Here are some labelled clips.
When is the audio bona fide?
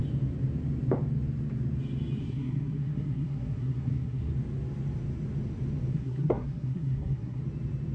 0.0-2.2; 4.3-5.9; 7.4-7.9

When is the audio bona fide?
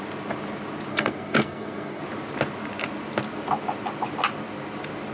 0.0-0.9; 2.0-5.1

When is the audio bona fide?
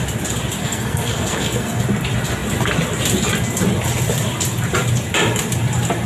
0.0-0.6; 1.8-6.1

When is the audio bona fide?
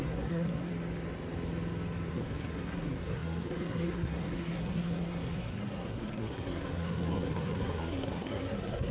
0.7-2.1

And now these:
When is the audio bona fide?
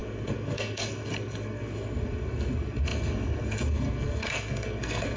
none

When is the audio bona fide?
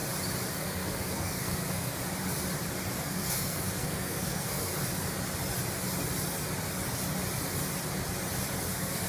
0.0-0.5; 2.0-3.0; 4.7-8.6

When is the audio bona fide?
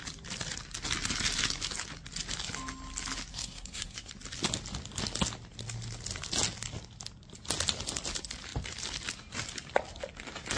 0.0-3.3; 4.1-10.6